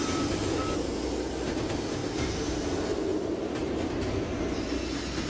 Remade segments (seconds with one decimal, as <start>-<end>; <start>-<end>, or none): none